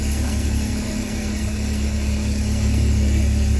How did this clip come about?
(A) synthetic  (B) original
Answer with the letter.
A